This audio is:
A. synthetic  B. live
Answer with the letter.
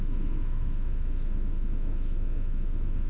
A